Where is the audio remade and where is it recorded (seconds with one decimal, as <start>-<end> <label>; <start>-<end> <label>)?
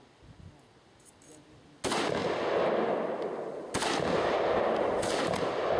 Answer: 0.0-5.8 recorded